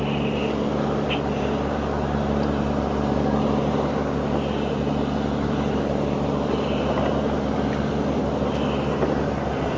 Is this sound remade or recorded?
recorded